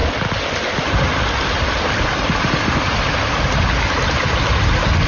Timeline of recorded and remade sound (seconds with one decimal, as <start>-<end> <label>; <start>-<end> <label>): 0.0-5.1 recorded